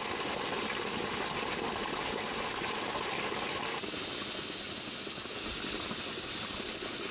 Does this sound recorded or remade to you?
recorded